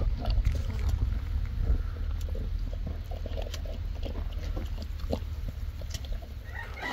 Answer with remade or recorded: recorded